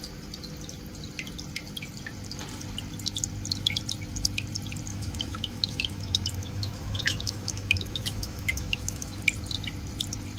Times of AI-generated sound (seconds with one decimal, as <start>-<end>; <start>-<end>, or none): 4.9-9.2